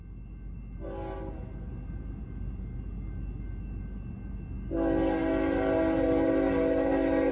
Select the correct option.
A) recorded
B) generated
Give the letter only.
A